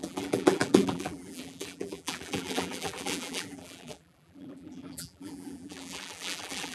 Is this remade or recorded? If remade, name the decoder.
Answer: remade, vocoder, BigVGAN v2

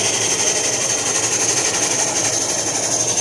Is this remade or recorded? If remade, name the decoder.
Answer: recorded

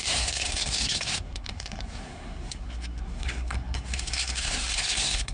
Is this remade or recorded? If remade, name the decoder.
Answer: remade, codec, SNAC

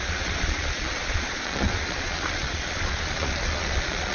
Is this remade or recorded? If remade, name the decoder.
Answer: remade, vocoder, Vocos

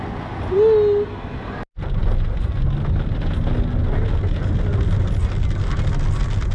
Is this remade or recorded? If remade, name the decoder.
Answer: recorded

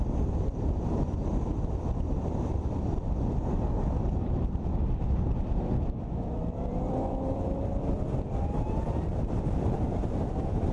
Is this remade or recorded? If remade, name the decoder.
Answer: remade, vocoder, BigVGAN v2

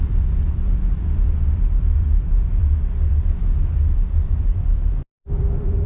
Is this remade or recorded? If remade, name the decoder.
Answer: remade, vocoder, BigVGAN v2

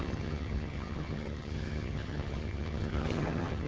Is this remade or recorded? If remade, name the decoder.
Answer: remade, vocoder, HiFi-GAN